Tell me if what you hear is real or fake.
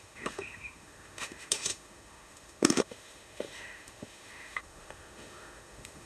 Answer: fake